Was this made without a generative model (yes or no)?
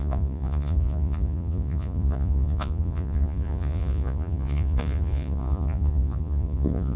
no